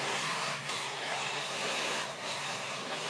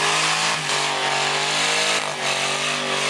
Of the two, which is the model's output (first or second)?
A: first